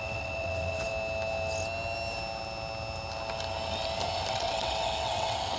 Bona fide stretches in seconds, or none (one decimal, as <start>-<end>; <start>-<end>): 0.9-4.3

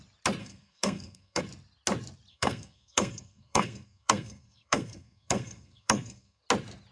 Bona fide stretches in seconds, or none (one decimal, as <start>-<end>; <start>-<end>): 0.0-0.4; 1.4-2.3; 6.4-6.9

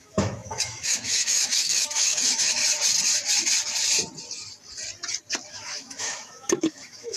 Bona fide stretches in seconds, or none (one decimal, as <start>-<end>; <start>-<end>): 2.6-5.5

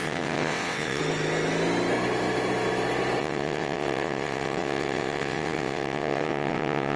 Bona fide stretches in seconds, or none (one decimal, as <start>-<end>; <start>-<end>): 1.0-3.2

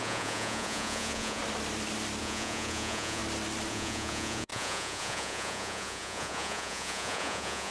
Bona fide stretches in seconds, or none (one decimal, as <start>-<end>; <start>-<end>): 1.4-2.2; 3.2-3.7

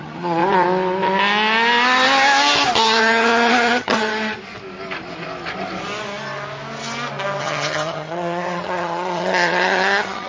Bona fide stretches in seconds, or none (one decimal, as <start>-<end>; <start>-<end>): 0.4-3.0; 4.1-7.4